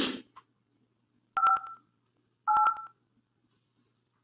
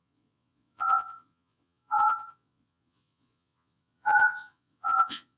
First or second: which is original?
first